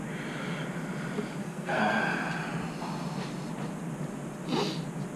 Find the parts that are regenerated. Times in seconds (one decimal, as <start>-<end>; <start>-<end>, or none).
1.4-2.0